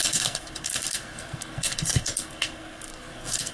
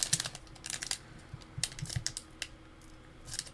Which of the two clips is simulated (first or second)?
first